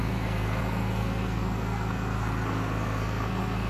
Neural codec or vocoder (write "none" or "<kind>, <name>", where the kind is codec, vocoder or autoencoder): codec, SNAC